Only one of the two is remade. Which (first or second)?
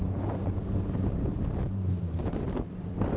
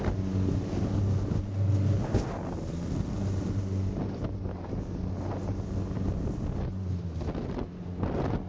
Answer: first